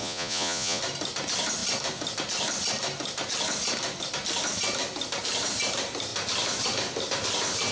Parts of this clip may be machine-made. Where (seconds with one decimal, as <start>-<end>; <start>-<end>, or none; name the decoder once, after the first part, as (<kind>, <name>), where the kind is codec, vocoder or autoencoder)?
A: 0.0-0.8 (vocoder, Vocos)